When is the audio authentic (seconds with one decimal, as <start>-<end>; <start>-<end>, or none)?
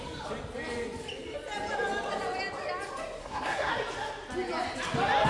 0.0-3.2; 3.7-5.3